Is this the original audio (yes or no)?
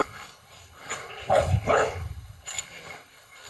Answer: no